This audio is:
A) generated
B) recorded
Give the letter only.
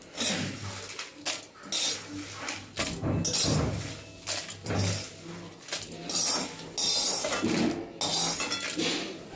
B